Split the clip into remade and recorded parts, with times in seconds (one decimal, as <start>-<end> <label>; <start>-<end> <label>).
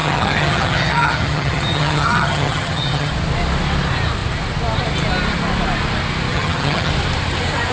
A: 0.0-3.1 remade; 3.1-6.3 recorded; 6.3-6.9 remade; 6.9-7.7 recorded